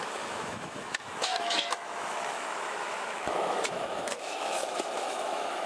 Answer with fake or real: fake